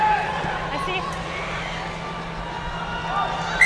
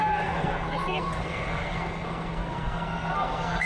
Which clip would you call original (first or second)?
first